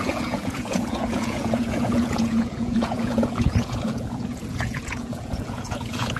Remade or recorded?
remade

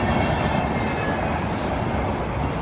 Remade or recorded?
recorded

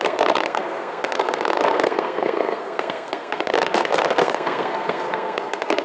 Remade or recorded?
remade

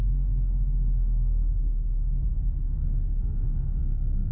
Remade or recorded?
remade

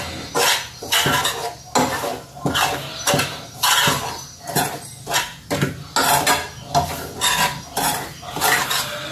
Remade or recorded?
recorded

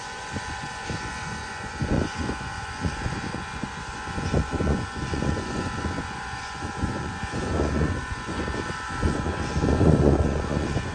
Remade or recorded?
remade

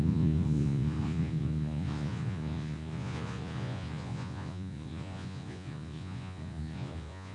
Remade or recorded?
remade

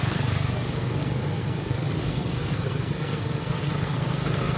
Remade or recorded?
remade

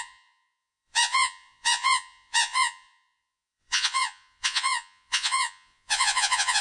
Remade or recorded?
remade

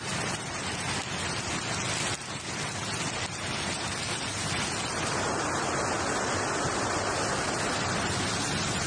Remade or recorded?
recorded